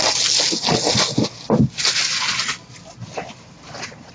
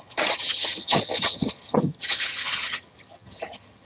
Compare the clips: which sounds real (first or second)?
first